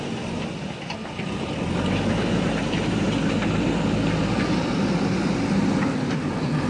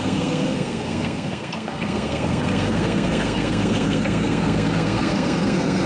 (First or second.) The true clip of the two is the first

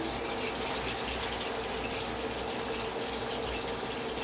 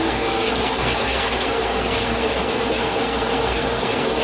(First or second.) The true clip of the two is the first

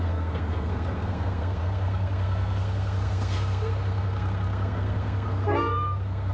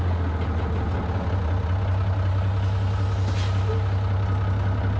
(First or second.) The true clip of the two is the second